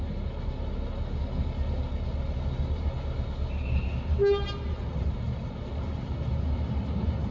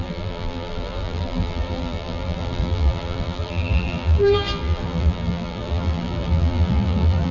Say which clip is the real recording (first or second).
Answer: first